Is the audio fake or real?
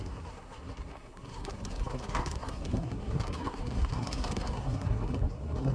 fake